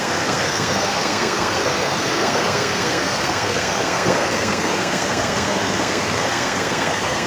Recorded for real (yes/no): no